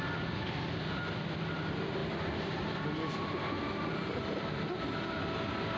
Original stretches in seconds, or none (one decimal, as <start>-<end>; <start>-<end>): 0.0-5.8